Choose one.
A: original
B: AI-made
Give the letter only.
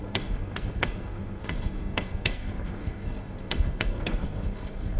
B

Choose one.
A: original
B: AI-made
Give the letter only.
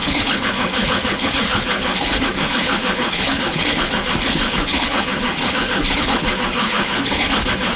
B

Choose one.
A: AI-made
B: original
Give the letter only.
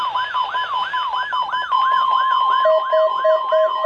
B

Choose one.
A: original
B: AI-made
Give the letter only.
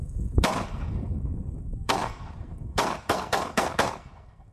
B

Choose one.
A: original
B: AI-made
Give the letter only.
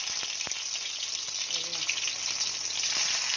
A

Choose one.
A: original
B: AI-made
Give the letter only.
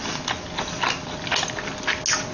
A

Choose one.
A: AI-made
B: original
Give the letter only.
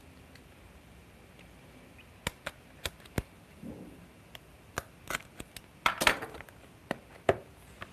B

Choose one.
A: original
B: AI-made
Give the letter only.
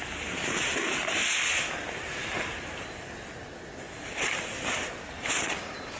A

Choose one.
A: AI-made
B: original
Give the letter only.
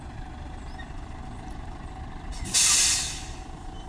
B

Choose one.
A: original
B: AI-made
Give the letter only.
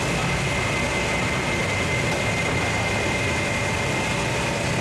A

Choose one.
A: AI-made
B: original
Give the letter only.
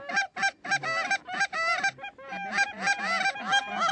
B